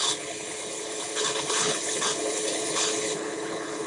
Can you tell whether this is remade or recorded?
remade